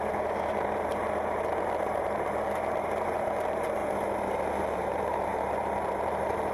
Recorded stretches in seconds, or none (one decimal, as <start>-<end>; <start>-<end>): 0.9-2.0; 3.8-4.6

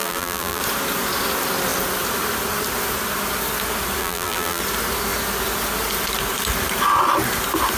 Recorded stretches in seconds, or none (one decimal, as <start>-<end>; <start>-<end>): 0.6-4.0; 4.6-7.8